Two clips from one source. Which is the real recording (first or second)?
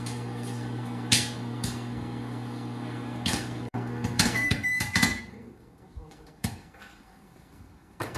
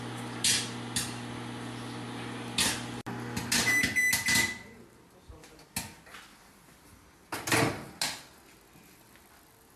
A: second